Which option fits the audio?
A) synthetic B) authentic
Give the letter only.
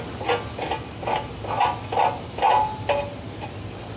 B